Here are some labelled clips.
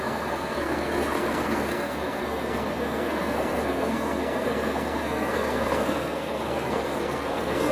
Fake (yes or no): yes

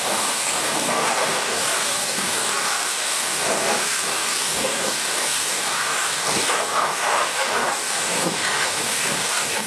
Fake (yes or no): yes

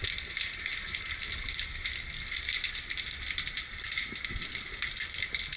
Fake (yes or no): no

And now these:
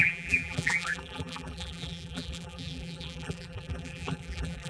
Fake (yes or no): yes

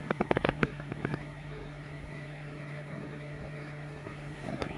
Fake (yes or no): yes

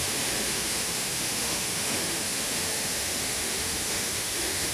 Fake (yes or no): yes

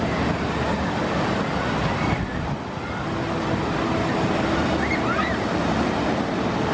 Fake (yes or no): no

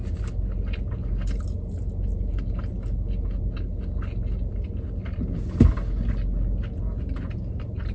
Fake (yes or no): no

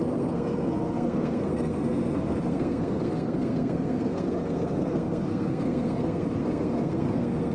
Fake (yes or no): yes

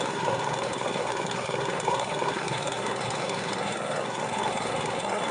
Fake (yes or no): yes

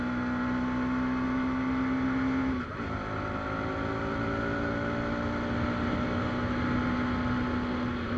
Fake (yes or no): no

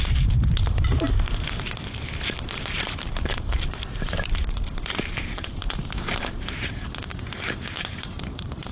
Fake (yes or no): yes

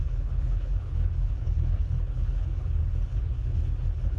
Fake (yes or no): yes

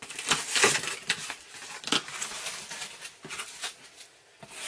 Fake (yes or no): no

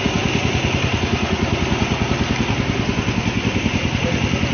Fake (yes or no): no